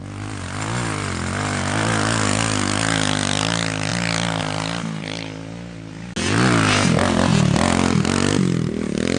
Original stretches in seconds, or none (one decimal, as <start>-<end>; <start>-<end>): 0.0-9.2